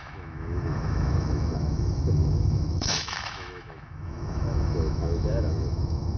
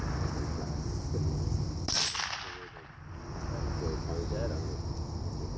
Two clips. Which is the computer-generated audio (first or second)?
first